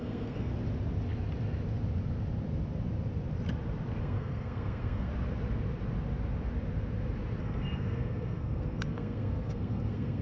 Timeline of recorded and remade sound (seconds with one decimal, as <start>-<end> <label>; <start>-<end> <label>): 0.0-0.5 remade; 0.5-4.0 recorded; 4.0-5.1 remade; 5.1-7.4 recorded; 7.4-10.2 remade